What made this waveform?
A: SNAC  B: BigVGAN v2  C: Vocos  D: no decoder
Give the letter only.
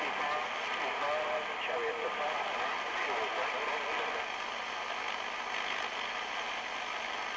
D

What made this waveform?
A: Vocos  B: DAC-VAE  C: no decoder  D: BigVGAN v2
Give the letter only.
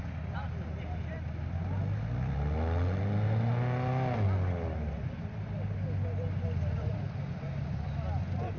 C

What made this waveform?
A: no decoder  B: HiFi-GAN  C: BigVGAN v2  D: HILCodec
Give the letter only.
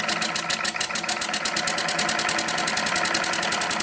A